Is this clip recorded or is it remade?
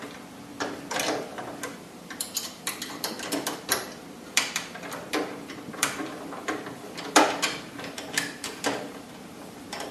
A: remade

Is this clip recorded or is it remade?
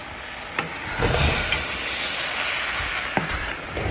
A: recorded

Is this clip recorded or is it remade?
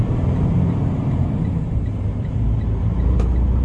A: remade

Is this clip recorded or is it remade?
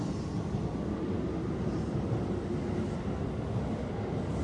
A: recorded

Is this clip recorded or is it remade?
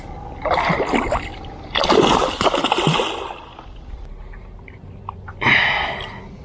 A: recorded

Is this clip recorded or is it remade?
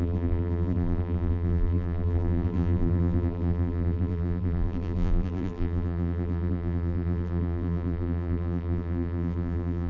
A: remade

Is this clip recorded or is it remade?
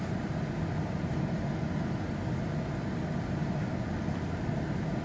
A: recorded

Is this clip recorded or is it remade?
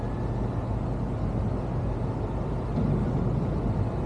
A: recorded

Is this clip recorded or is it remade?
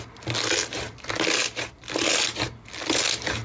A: recorded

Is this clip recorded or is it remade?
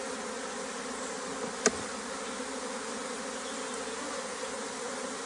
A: recorded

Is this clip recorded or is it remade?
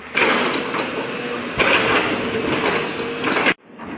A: recorded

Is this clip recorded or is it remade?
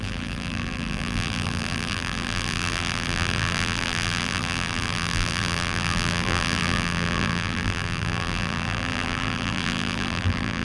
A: remade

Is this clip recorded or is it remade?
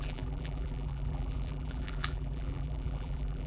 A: remade